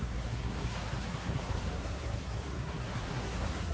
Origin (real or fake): fake